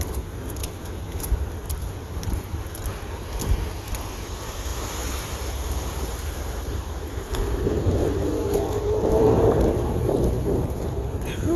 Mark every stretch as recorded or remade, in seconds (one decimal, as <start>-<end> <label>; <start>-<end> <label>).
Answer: 0.0-1.6 recorded; 1.6-2.6 remade; 2.6-4.7 recorded; 4.7-7.1 remade; 7.1-8.0 recorded; 8.0-10.4 remade; 10.4-11.6 recorded